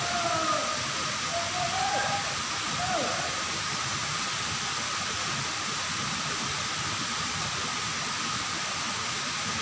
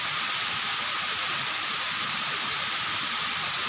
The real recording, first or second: first